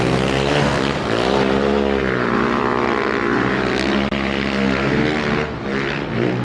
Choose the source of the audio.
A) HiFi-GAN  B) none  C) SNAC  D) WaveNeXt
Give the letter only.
B